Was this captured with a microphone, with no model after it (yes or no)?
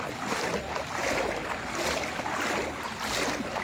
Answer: yes